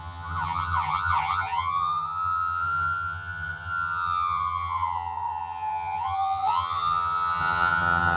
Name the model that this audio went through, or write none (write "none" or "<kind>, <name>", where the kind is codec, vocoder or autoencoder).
vocoder, HiFi-GAN